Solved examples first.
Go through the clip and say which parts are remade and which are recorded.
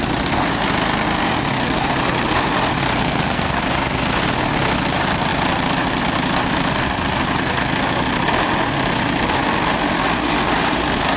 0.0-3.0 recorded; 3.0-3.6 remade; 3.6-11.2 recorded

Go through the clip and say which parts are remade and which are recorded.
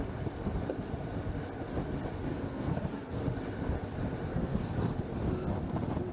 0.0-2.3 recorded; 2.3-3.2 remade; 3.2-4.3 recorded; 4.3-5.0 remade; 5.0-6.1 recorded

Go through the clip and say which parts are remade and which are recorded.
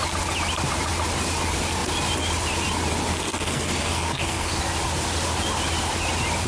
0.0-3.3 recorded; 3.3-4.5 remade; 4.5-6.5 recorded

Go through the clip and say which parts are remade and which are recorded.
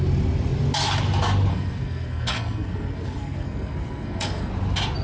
0.0-1.5 recorded; 1.5-4.5 remade; 4.5-5.0 recorded